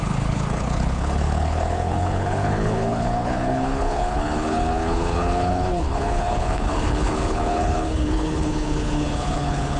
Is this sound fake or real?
fake